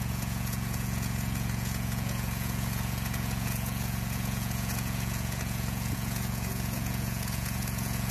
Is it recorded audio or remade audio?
remade